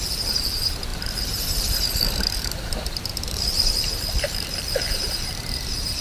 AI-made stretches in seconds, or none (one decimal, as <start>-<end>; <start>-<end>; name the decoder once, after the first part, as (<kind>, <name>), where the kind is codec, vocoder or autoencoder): 0.0-6.0 (vocoder, BigVGAN v2)